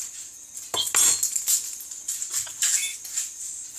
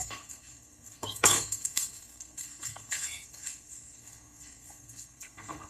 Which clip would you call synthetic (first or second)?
second